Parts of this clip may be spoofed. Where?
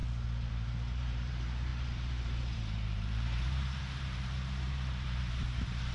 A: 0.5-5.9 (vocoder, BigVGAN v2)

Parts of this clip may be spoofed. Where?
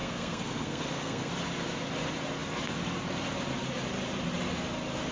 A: 0.0-1.3 (codec, SNAC)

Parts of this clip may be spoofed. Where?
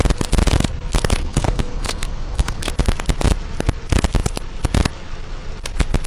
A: 1.2-2.7 (codec, SNAC)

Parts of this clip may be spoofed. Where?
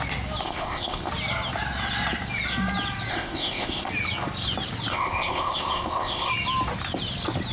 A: 0.4-1.1 (codec, ZipCodec); 3.1-3.9; 4.9-6.3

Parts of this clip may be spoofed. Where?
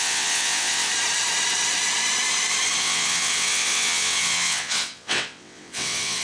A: 0.0-0.9 (vocoder, WaveNeXt); 2.8-6.2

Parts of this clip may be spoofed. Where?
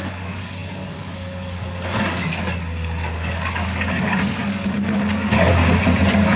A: 0.0-5.5 (codec, DAC)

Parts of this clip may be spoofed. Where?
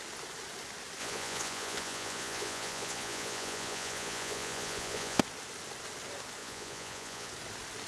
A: 1.0-5.2 (vocoder, Vocos); 6.4-7.3